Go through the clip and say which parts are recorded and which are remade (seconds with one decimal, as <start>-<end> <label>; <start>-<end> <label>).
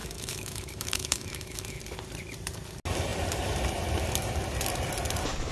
0.0-1.8 remade; 1.8-5.5 recorded